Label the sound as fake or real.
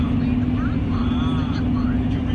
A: real